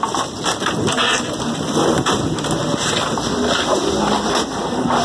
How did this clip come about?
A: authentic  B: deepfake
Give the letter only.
A